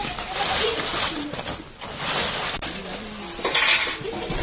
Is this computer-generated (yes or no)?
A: no